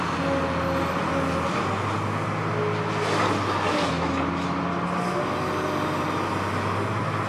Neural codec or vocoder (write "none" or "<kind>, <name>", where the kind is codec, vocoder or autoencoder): none